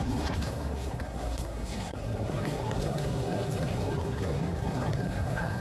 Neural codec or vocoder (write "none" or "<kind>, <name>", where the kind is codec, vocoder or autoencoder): codec, SNAC